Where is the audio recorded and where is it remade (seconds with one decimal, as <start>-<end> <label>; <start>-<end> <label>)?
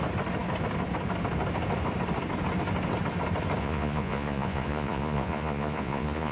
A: 0.0-3.6 recorded; 3.6-6.3 remade